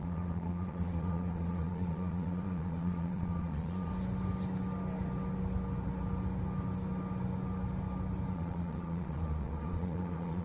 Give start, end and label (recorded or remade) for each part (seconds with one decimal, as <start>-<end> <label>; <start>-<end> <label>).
0.0-3.9 remade; 3.9-8.3 recorded; 8.3-10.4 remade